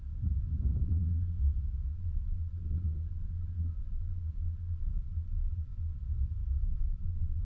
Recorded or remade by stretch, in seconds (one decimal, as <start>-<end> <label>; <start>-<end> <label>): 0.0-0.8 recorded; 0.8-1.4 remade; 1.4-1.9 recorded; 1.9-6.0 remade; 6.0-6.7 recorded; 6.7-7.4 remade